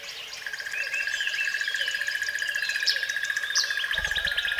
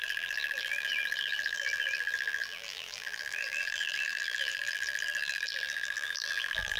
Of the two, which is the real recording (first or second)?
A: first